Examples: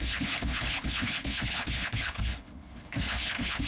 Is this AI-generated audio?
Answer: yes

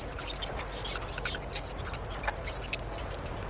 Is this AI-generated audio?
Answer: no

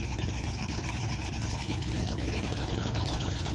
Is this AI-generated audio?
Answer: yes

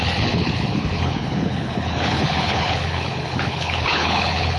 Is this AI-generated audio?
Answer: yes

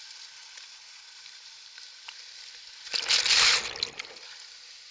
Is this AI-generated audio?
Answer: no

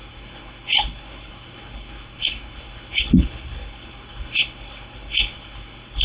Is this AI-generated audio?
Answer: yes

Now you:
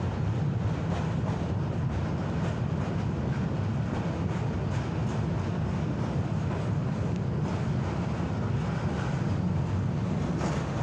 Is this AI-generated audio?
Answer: no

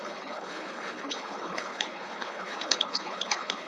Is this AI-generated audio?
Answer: yes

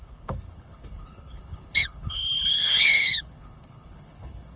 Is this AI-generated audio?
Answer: yes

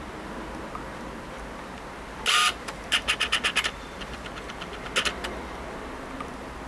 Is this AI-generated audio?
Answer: no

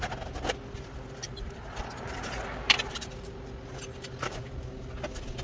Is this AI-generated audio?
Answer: no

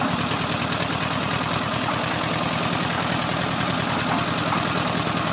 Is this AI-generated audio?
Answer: no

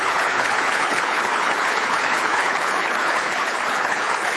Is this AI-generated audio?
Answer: yes